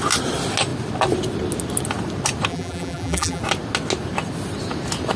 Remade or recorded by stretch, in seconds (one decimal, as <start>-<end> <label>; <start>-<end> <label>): 0.0-2.5 recorded; 2.5-3.4 remade; 3.4-5.2 recorded